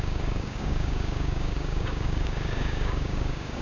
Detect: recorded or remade remade